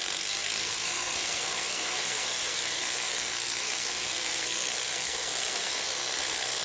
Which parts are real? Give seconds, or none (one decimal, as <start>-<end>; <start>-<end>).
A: none